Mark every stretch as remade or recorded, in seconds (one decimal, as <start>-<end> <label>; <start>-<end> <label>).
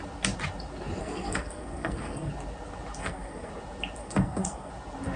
0.0-1.0 recorded; 1.0-2.3 remade; 2.3-3.0 recorded; 3.0-3.5 remade; 3.5-4.0 recorded; 4.0-4.7 remade; 4.7-5.2 recorded